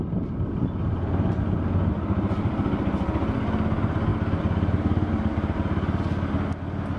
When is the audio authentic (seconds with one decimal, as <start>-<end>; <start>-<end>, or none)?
0.0-7.0